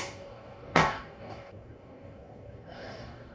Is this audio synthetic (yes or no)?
yes